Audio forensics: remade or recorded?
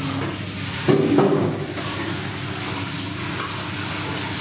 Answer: recorded